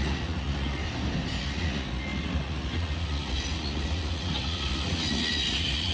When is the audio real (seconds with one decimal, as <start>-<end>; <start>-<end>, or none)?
0.8-1.4